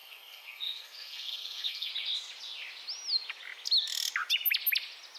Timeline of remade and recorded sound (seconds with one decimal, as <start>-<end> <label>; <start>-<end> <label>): 0.0-1.9 remade; 1.9-5.2 recorded